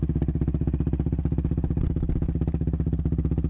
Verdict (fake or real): real